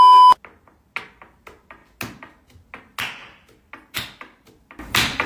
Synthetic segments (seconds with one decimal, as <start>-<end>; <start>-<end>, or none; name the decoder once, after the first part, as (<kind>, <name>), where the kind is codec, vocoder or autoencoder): none